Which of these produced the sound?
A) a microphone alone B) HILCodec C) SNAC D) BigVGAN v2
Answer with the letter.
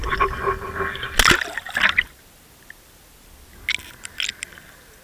A